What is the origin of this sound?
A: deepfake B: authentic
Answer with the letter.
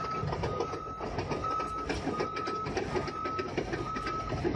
B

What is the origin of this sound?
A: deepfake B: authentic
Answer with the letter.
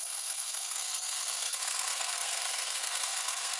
A